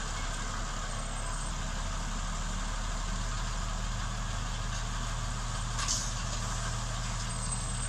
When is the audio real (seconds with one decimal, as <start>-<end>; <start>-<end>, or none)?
0.0-0.9; 1.5-7.3